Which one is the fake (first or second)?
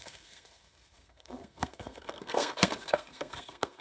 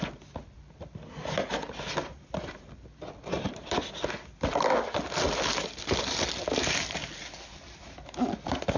first